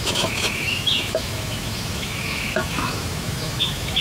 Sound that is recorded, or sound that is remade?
remade